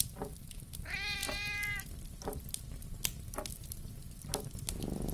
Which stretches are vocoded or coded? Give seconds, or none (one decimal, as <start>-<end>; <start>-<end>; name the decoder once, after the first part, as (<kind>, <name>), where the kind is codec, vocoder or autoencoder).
none